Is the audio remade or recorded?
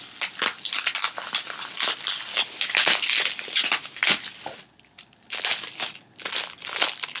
recorded